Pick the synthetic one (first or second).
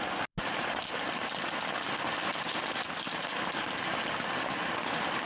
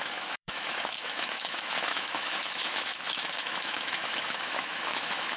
second